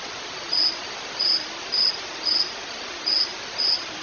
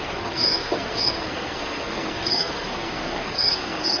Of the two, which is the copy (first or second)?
second